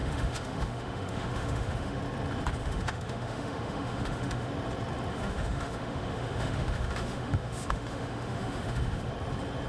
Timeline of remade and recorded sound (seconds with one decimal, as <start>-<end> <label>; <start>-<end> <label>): 0.0-2.0 remade; 2.0-2.6 recorded; 2.6-4.5 remade; 4.5-5.1 recorded; 5.1-9.1 remade; 9.1-9.7 recorded